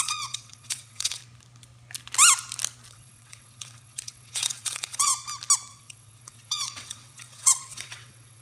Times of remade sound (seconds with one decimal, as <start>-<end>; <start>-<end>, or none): 0.0-1.2; 2.9-5.1; 5.7-8.4

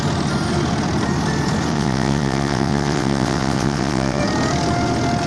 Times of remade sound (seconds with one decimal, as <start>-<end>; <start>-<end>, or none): 1.7-4.2

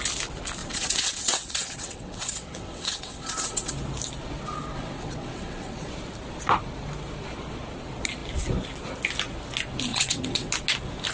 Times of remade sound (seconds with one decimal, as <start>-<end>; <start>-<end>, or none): 0.6-3.7; 4.7-5.9; 9.9-10.5

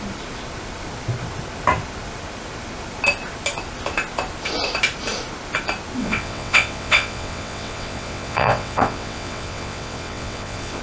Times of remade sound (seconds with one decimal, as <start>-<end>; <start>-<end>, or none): 6.0-10.8

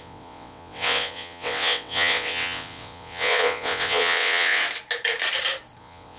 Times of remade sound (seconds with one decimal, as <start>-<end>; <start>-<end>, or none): 0.0-4.6; 5.8-6.2

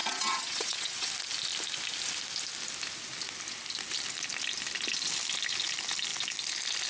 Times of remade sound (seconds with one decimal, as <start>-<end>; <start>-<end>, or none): 0.0-1.1

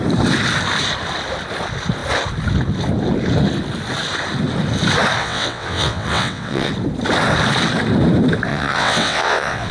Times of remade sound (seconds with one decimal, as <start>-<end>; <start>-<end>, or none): 5.2-6.7; 8.5-9.7